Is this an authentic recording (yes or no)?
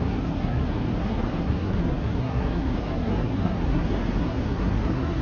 no